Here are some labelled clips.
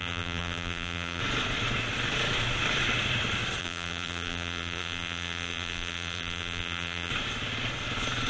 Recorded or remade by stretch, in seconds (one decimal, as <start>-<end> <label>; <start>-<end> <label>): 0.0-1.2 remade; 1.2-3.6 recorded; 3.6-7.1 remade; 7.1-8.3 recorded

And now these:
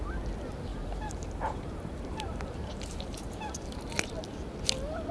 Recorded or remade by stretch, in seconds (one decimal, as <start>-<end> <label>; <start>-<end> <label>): 0.0-0.7 recorded; 0.7-3.8 remade; 3.8-5.1 recorded

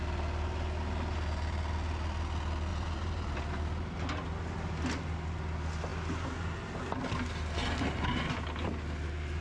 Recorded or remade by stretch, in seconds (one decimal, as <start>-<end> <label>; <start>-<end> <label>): 0.0-2.7 recorded; 2.7-3.4 remade; 3.4-9.4 recorded